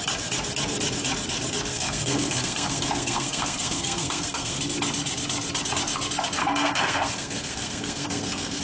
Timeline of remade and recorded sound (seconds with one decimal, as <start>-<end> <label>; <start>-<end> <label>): 0.0-1.7 recorded; 1.7-4.6 remade; 4.6-6.4 recorded; 6.4-8.6 remade